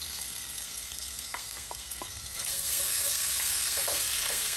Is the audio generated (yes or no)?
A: yes